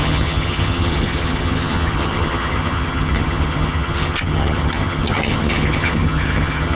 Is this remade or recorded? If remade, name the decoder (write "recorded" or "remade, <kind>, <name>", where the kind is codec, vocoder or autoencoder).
remade, vocoder, HiFi-GAN